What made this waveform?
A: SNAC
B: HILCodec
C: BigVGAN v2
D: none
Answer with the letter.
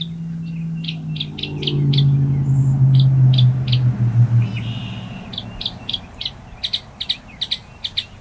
D